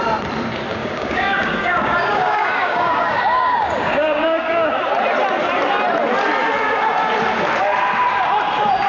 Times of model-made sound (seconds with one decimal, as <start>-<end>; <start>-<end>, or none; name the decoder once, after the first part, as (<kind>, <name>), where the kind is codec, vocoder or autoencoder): 0.8-4.8 (codec, DAC)